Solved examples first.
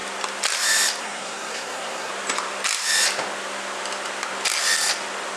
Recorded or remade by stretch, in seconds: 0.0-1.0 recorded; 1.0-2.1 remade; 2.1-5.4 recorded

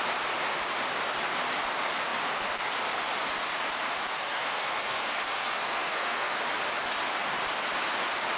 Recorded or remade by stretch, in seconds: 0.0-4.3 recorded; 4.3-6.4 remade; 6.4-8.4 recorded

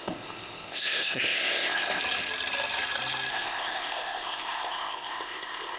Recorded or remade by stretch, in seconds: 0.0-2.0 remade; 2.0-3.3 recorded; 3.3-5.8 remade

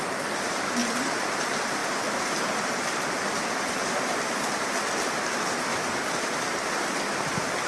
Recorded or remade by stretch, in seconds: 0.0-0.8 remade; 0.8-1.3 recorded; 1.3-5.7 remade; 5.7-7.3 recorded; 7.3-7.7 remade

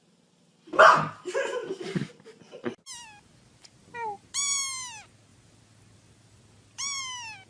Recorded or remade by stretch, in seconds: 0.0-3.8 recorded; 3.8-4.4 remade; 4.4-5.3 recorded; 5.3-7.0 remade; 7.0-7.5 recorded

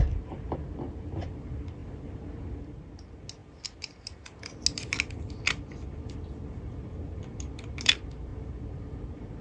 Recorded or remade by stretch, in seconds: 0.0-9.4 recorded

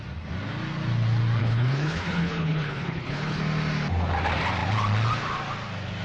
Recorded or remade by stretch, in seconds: 0.0-1.4 recorded; 1.4-3.4 remade; 3.4-6.0 recorded